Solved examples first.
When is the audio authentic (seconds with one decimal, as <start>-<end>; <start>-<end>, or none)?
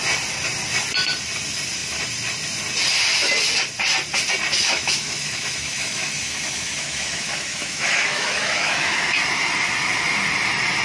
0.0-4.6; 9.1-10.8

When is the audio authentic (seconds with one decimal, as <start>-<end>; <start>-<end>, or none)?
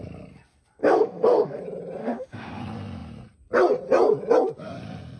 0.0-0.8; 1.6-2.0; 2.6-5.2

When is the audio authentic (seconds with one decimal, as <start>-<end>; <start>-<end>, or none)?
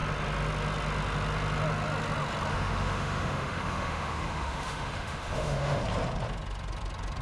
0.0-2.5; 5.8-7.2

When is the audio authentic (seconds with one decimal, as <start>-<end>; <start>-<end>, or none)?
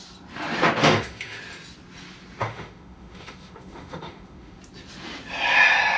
0.0-0.8; 1.4-2.4; 4.6-6.0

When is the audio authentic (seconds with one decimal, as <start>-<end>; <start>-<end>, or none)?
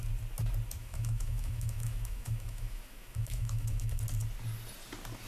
0.0-0.8; 4.0-5.3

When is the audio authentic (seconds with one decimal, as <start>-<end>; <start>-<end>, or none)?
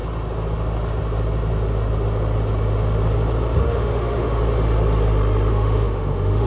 0.0-3.6; 4.4-5.5